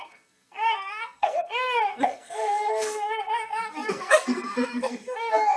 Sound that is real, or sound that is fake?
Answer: fake